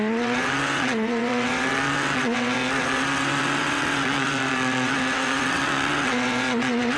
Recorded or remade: remade